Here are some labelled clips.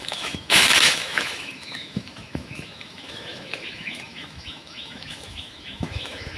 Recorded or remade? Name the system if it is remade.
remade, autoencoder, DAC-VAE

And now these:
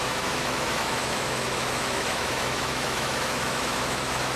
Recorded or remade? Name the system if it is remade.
remade, autoencoder, DAC-VAE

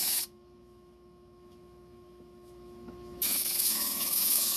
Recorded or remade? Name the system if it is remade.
remade, autoencoder, DAC-VAE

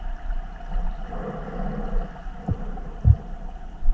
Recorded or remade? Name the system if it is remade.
recorded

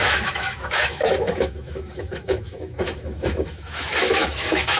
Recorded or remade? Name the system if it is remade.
remade, autoencoder, DAC-VAE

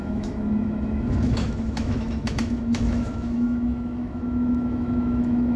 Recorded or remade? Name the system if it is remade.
remade, autoencoder, DAC-VAE